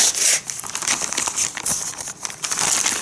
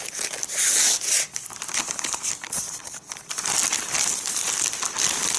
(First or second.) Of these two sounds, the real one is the second